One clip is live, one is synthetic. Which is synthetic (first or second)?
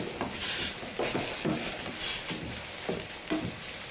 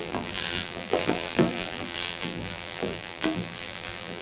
second